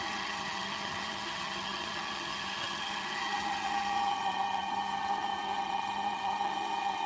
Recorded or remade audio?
remade